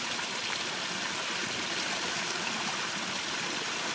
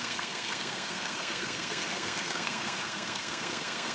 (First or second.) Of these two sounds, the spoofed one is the second